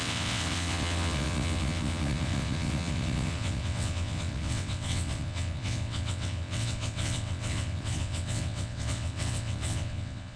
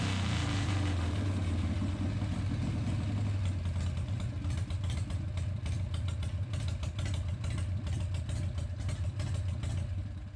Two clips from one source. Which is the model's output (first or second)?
first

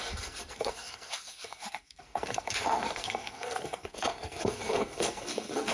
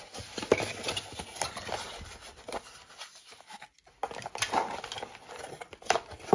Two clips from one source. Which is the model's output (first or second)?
first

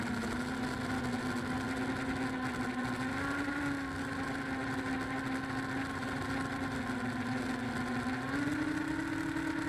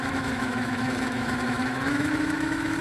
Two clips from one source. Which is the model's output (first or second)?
second